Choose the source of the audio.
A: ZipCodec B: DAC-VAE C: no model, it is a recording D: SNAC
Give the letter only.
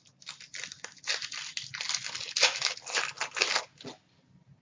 C